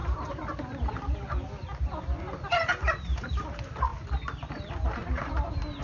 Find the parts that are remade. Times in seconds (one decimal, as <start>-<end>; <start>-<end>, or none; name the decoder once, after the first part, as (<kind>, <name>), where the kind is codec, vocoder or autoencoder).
none